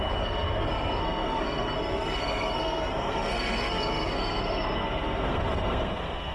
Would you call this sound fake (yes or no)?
yes